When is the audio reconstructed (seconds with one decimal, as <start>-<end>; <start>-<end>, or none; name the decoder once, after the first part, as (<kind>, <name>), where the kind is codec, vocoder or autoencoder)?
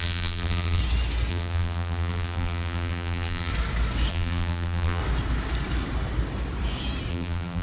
0.0-0.8 (vocoder, BigVGAN v2); 1.3-3.5; 4.1-5.0; 7.1-7.6